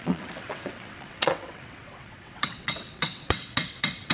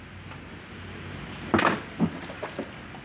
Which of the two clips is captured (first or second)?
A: second